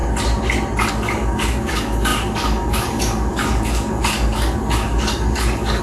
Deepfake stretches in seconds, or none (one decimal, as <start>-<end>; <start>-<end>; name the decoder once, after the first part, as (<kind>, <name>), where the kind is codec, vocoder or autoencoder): 0.9-5.8 (codec, DAC)